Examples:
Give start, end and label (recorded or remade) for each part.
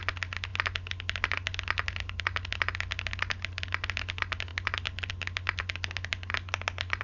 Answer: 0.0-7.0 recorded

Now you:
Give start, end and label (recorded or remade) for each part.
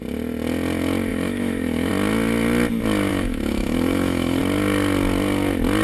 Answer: 0.0-1.1 recorded; 1.1-1.9 remade; 1.9-3.1 recorded; 3.1-4.4 remade; 4.4-5.8 recorded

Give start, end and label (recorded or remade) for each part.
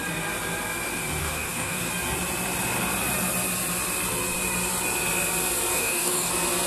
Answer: 0.0-1.2 recorded; 1.2-1.9 remade; 1.9-5.7 recorded; 5.7-6.3 remade; 6.3-6.7 recorded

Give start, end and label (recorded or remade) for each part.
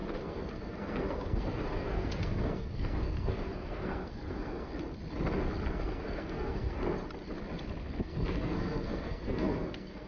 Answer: 0.0-4.7 remade; 4.7-5.7 recorded; 5.7-6.8 remade; 6.8-8.0 recorded; 8.0-10.1 remade